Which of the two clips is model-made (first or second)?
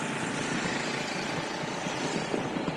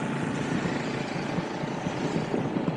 first